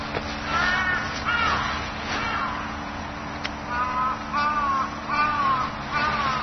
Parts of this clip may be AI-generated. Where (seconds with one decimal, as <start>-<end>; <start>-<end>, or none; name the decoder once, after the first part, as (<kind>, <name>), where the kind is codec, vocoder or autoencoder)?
1.0-3.5 (vocoder, Vocos); 5.0-5.9